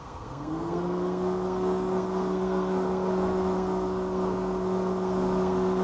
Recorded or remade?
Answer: remade